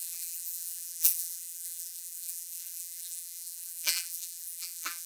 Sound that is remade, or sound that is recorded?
remade